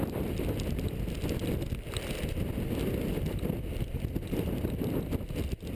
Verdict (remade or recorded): recorded